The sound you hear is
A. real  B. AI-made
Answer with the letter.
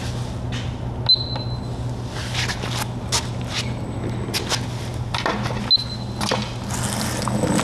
A